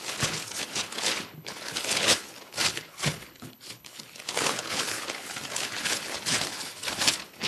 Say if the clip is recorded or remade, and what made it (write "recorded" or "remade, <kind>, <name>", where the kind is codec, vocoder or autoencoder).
remade, codec, HILCodec